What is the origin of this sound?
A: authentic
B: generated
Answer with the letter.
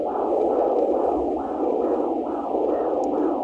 A